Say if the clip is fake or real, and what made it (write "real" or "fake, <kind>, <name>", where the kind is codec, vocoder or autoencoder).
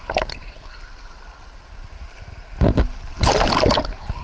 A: real